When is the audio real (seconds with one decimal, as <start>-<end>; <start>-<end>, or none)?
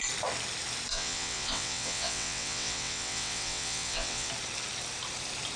0.0-0.9; 4.3-5.6